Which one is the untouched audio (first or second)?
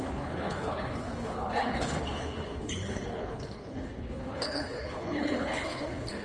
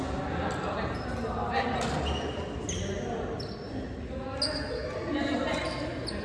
second